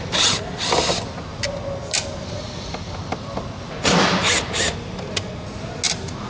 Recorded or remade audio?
recorded